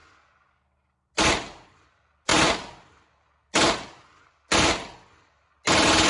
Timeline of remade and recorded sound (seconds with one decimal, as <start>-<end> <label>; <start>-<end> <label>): 0.0-6.1 recorded